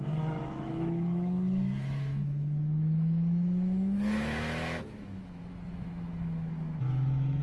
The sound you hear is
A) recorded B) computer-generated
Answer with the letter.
B